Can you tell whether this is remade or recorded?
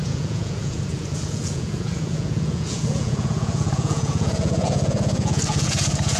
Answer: remade